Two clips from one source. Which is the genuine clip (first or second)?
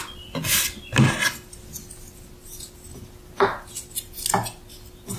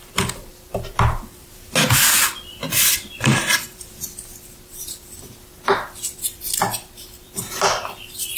first